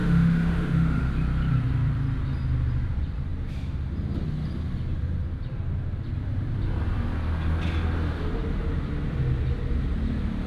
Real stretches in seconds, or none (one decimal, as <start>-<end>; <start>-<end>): 1.1-10.5